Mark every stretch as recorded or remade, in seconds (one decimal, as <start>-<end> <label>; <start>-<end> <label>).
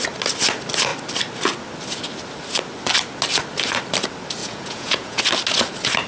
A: 0.0-4.4 recorded; 4.4-5.2 remade; 5.2-6.1 recorded